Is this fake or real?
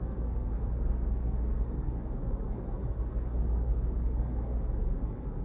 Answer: fake